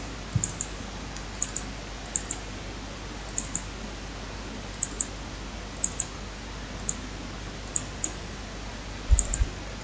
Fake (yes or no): no